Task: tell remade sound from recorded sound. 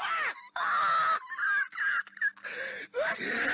recorded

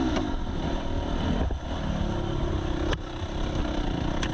recorded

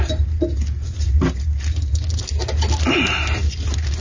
recorded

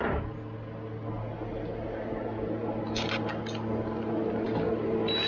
recorded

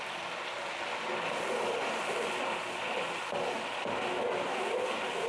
recorded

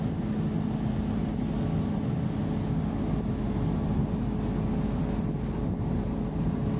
recorded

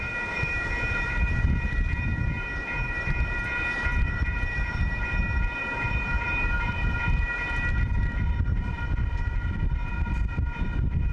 remade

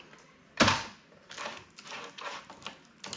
recorded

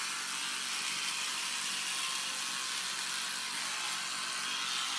recorded